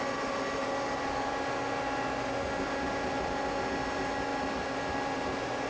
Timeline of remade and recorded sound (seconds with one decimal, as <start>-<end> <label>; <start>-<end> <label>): 0.0-5.7 recorded